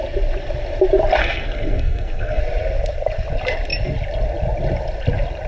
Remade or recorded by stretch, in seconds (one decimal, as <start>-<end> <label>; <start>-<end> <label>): 0.0-1.2 recorded; 1.2-2.4 remade; 2.4-5.5 recorded